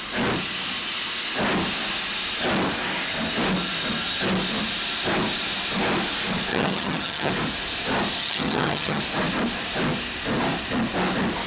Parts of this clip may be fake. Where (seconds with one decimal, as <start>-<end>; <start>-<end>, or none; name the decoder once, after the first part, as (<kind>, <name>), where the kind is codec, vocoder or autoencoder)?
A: 6.5-7.3 (vocoder, HiFi-GAN); 8.2-9.0